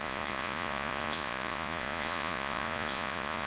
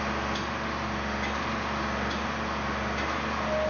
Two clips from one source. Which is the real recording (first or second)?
second